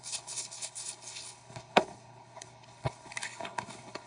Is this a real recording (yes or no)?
no